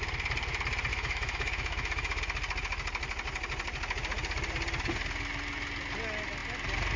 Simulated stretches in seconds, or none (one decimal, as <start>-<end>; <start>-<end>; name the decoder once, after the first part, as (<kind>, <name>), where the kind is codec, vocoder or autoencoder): 0.9-2.2 (autoencoder, DAC-VAE)